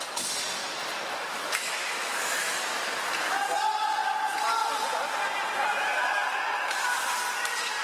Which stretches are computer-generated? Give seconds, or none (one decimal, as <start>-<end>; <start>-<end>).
1.3-2.7